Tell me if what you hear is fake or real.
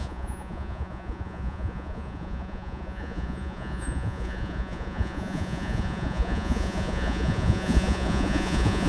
fake